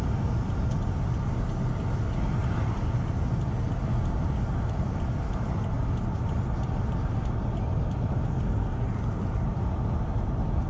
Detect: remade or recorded recorded